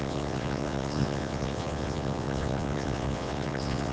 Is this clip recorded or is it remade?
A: remade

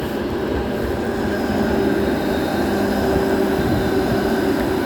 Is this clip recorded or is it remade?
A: recorded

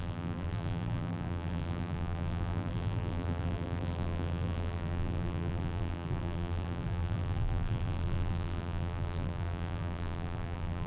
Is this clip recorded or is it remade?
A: remade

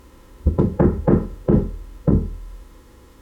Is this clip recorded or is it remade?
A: remade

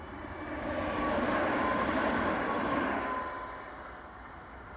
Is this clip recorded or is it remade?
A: recorded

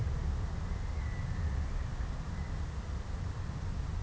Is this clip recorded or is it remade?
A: recorded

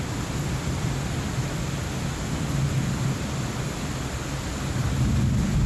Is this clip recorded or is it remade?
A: recorded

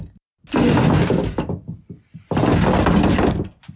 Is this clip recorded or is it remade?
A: recorded